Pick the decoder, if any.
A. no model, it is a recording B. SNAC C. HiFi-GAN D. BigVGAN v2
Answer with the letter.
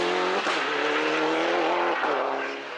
A